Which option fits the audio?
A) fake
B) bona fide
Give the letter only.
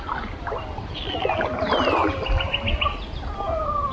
B